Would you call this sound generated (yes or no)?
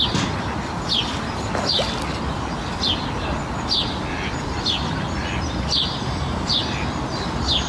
no